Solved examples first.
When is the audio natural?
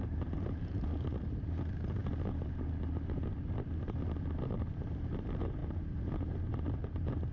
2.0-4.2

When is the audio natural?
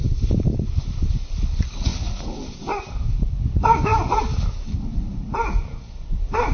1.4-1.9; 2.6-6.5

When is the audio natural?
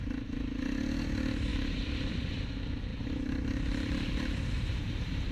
0.0-2.9